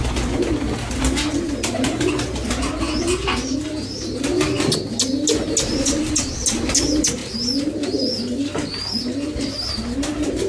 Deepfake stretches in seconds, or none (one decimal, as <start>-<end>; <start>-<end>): none